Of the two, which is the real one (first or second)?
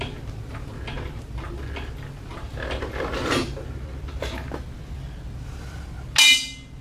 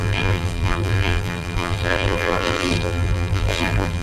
first